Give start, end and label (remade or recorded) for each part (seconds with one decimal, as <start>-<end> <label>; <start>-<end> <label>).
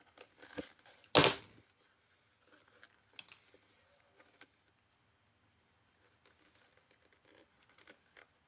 0.0-8.5 recorded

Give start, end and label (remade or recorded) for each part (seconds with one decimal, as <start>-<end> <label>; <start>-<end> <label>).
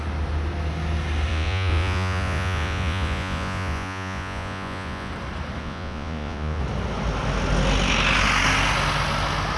0.0-1.3 recorded; 1.3-5.1 remade; 5.1-5.6 recorded; 5.6-6.6 remade; 6.6-9.6 recorded